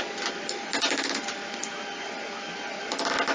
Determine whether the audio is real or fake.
real